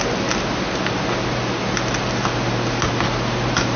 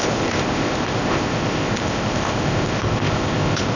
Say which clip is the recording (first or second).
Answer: first